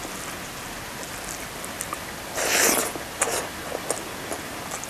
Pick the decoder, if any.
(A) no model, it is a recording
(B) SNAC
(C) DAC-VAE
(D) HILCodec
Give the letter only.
A